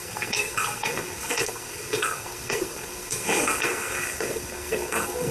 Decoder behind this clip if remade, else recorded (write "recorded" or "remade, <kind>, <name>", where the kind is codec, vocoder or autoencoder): remade, codec, SNAC